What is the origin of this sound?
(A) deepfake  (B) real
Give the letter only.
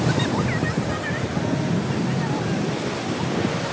B